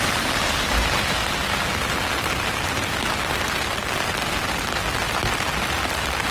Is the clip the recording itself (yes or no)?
yes